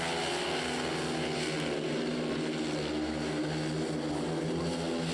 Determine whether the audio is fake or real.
real